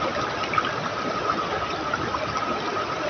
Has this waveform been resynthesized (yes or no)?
no